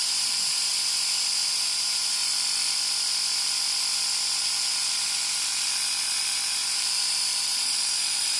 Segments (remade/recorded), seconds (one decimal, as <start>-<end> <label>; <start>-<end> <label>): 0.0-0.7 remade; 0.7-1.5 recorded; 1.5-2.2 remade; 2.2-4.4 recorded; 4.4-5.5 remade; 5.5-6.2 recorded; 6.2-8.4 remade